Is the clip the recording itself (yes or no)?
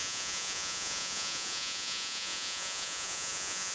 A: no